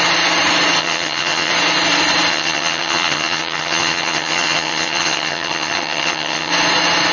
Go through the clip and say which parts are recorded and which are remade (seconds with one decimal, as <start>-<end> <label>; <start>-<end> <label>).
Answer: 0.0-0.8 recorded; 0.8-1.5 remade; 1.5-2.3 recorded; 2.3-6.5 remade; 6.5-7.1 recorded